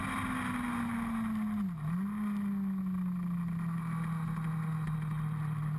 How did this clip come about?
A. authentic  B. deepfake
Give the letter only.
A